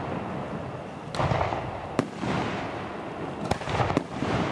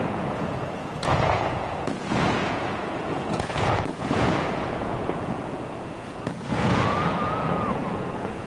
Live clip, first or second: first